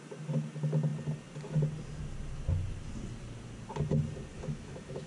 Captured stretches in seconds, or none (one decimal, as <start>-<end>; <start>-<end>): 0.0-4.3